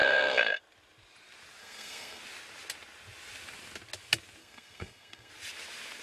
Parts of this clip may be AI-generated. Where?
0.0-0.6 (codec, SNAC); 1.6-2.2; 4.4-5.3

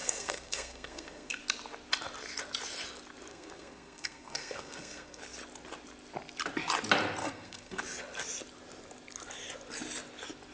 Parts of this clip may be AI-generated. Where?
0.0-1.4 (codec, SNAC); 3.3-5.2; 7.2-7.8

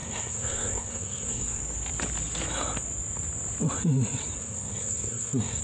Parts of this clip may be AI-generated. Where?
0.0-1.6 (codec, SNAC); 4.4-5.6